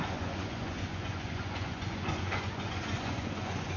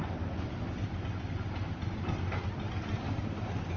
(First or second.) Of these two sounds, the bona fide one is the second